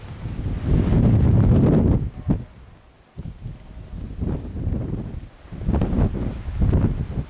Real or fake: real